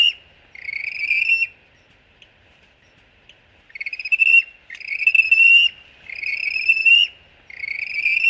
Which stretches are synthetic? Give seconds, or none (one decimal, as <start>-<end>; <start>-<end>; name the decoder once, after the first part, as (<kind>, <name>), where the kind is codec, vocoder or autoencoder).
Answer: none